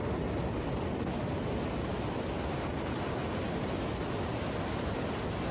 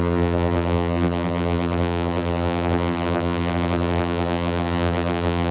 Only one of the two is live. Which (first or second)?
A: first